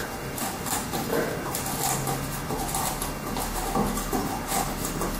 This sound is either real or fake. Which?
real